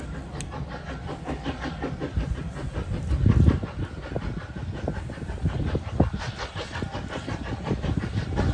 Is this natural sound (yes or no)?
yes